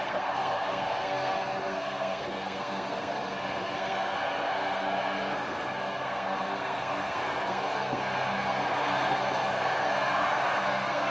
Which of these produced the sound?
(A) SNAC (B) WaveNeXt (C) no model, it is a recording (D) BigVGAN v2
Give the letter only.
A